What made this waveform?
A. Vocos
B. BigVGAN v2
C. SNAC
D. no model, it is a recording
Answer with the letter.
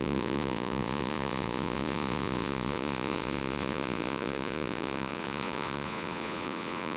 A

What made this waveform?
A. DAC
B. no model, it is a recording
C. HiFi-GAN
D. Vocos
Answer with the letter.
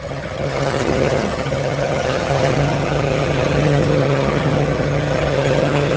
C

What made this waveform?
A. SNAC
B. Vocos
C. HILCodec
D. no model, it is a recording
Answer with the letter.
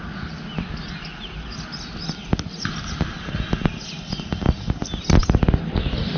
D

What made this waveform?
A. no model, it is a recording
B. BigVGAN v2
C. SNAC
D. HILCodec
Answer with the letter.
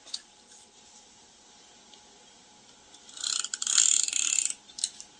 A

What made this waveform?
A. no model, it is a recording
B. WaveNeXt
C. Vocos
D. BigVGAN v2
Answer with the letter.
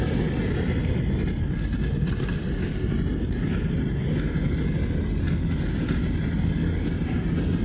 A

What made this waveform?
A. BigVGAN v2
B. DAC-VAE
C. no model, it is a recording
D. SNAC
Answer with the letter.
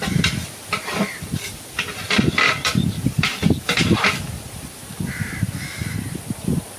A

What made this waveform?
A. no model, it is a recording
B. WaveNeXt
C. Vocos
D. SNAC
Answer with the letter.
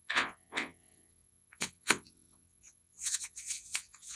B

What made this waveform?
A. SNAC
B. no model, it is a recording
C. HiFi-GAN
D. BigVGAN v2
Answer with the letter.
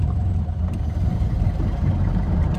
D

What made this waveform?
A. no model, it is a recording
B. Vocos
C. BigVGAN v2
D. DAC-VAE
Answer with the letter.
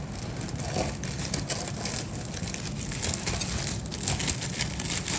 A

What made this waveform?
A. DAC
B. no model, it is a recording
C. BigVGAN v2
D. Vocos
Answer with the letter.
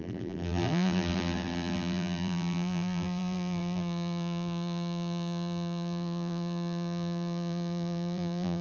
C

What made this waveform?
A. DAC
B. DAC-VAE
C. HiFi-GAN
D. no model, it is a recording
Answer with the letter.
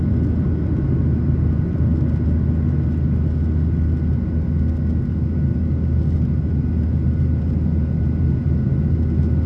D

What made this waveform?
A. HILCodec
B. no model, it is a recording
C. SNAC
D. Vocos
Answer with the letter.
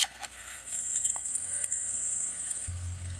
C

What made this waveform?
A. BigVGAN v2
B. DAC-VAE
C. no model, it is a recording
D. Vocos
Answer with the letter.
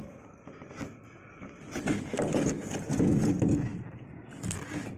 C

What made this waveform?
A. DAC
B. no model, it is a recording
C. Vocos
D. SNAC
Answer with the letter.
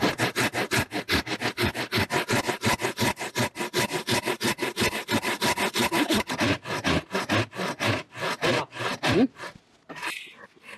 B